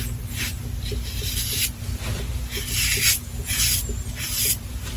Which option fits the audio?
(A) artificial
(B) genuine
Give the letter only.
A